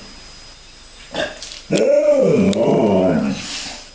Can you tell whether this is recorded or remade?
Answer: recorded